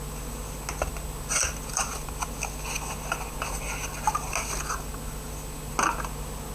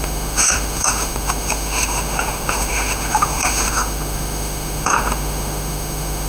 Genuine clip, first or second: first